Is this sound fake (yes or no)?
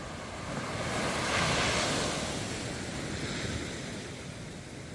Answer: no